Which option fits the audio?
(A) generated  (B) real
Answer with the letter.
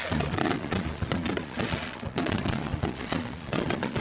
A